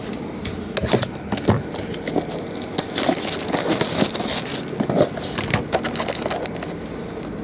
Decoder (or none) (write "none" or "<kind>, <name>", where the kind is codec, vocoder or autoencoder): none